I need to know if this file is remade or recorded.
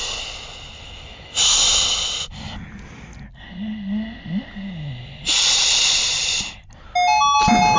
recorded